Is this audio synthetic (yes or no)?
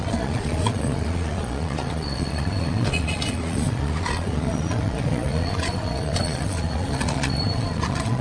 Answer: yes